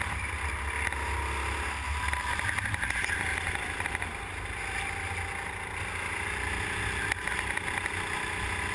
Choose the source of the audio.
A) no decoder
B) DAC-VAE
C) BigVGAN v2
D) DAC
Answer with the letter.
A